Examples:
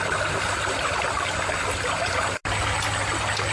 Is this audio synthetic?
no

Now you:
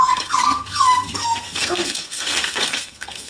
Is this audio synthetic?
yes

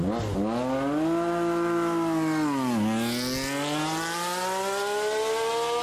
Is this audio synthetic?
no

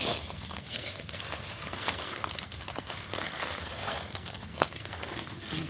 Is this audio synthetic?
yes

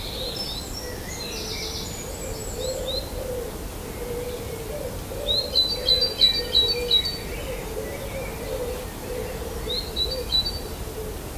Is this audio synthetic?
no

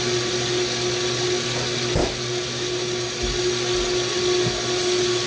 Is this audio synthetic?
no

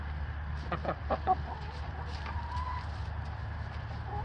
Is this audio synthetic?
no